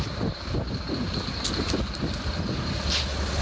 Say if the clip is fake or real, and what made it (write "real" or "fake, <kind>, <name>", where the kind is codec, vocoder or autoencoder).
real